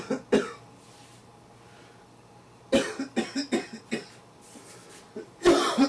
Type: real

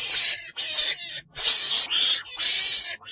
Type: real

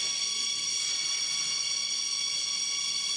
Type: real